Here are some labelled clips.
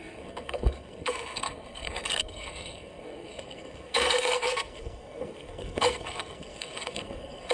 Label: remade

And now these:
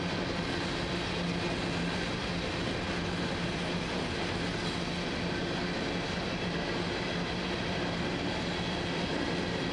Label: recorded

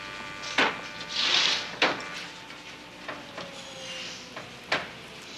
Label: recorded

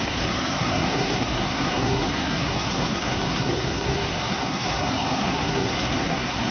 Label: remade